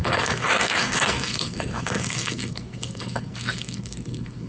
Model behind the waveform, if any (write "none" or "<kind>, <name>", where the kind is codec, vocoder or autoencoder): codec, SNAC